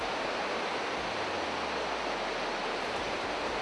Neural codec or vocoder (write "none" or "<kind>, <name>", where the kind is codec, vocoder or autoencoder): none